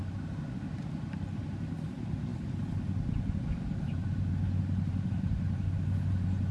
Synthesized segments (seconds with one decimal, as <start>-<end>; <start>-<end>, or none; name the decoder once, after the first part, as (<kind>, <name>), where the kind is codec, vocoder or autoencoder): none